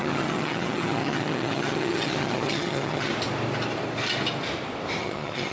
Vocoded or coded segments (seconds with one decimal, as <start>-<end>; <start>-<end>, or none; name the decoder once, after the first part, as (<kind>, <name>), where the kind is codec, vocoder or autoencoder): 0.0-3.1 (vocoder, HiFi-GAN); 5.0-5.5